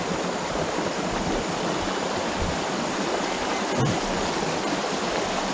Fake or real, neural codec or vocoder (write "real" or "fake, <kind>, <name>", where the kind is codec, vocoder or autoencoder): real